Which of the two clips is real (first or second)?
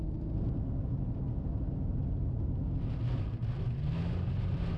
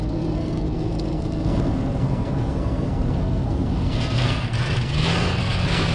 first